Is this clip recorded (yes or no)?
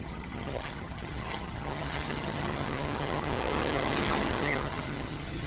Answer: no